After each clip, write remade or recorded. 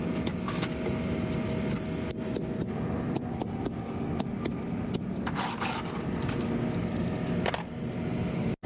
recorded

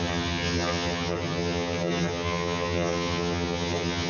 remade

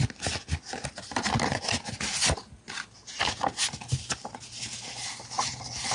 recorded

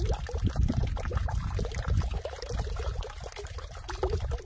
remade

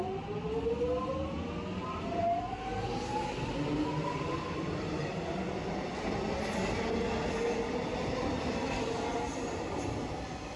recorded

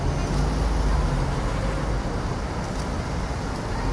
recorded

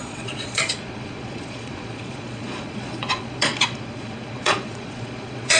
remade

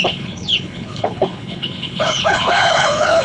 remade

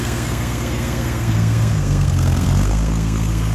remade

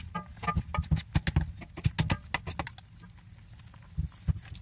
recorded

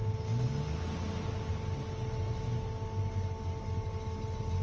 recorded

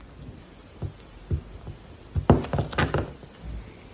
recorded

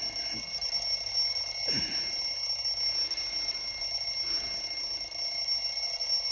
recorded